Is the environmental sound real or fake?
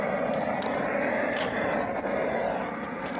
real